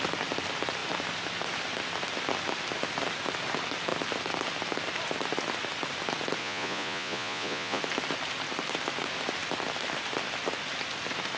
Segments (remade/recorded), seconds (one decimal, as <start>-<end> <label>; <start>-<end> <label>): 0.0-6.4 recorded; 6.4-7.8 remade; 7.8-11.4 recorded